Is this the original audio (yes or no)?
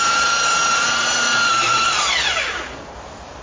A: yes